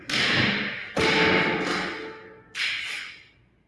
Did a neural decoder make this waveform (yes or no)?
no